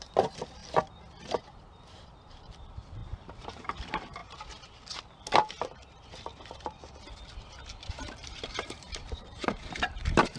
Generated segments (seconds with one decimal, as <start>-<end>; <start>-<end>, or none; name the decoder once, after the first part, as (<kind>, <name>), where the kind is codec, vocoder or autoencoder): 0.0-0.6 (vocoder, BigVGAN v2); 2.3-4.2; 7.9-10.4